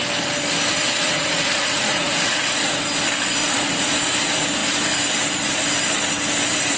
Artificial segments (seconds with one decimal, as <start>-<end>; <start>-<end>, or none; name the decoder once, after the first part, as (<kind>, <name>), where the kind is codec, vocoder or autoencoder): 0.7-2.8 (vocoder, Vocos); 3.4-4.0